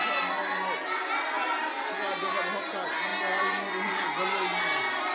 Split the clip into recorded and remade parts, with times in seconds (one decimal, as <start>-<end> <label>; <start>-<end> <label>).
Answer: 0.0-5.1 recorded